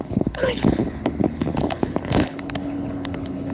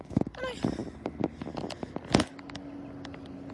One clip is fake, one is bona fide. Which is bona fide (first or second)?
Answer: second